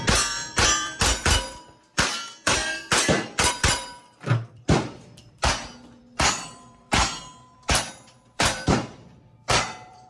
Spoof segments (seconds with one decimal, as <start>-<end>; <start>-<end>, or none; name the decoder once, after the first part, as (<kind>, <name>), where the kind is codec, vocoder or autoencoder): 0.0-10.1 (vocoder, BigVGAN v2)